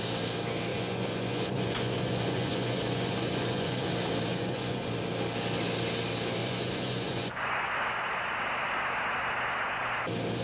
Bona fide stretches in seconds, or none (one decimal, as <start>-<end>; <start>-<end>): 0.0-0.7; 3.9-4.3; 4.9-6.4; 7.7-10.4